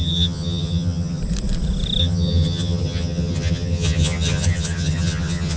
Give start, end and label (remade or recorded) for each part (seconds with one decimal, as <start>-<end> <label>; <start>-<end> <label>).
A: 0.0-1.2 remade; 1.2-2.0 recorded; 2.0-5.6 remade